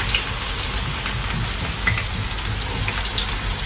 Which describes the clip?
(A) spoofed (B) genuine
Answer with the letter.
B